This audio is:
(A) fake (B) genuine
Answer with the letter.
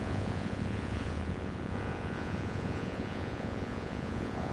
A